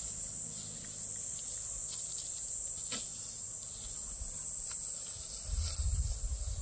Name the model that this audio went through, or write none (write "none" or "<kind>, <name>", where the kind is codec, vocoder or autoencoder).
vocoder, BigVGAN v2